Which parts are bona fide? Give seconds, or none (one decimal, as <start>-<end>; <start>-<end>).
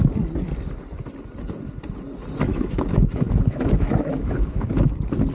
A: 0.0-2.5; 4.7-5.3